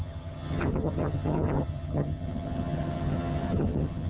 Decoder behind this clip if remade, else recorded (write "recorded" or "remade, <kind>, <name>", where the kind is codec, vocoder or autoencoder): remade, vocoder, HiFi-GAN